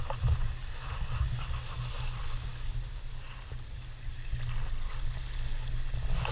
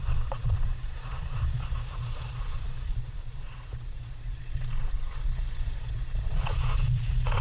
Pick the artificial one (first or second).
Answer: second